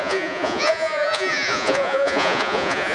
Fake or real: fake